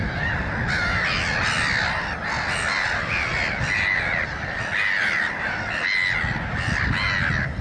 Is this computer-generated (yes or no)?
no